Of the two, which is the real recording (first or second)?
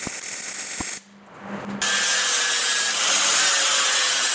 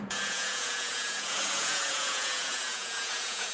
first